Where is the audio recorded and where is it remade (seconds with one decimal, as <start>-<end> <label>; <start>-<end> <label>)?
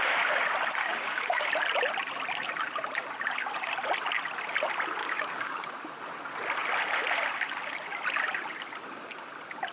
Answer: 0.0-0.9 recorded; 0.9-1.5 remade; 1.5-5.0 recorded; 5.0-5.8 remade; 5.8-9.7 recorded